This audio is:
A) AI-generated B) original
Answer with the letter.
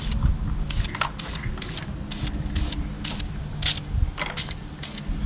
B